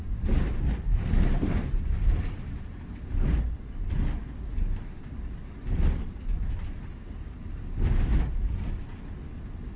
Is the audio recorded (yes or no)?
yes